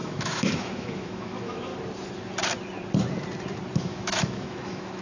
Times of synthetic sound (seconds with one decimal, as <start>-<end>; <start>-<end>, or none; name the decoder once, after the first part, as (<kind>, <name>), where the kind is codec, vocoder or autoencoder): 0.0-1.7 (autoencoder, DAC-VAE); 3.8-5.0